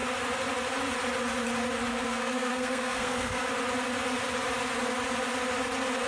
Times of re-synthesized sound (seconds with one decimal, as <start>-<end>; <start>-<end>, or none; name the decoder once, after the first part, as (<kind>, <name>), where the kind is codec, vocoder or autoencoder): 1.9-3.5 (codec, SNAC)